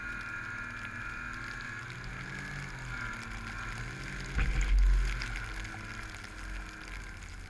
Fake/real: real